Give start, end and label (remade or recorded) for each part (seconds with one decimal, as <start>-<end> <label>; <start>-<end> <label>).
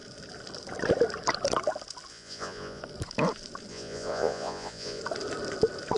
0.0-2.1 recorded; 2.1-2.8 remade; 2.8-3.7 recorded; 3.7-5.0 remade; 5.0-6.0 recorded